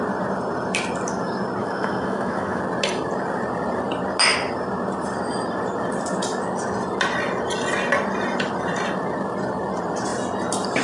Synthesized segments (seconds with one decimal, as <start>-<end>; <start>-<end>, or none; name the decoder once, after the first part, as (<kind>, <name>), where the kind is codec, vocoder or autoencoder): 1.6-2.6 (autoencoder, DAC-VAE)